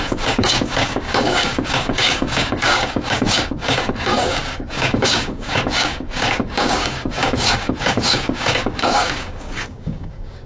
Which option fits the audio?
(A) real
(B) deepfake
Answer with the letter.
B